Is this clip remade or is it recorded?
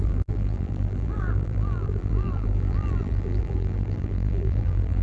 remade